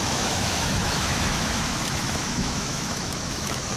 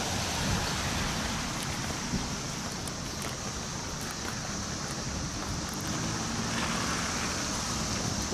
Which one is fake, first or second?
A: first